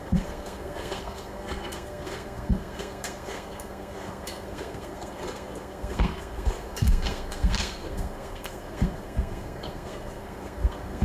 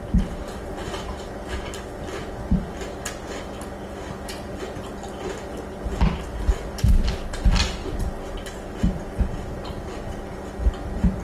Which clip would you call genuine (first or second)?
second